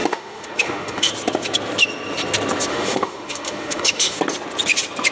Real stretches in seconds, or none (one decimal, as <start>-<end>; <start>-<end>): 1.1-2.7; 4.2-5.1